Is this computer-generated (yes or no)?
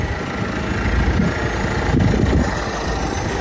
no